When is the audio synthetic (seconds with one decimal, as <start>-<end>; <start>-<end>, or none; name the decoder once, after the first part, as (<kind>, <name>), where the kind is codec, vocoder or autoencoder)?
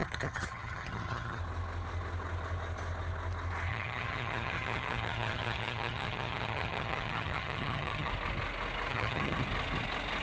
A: 0.0-1.4 (vocoder, HiFi-GAN); 3.7-8.1; 8.9-9.4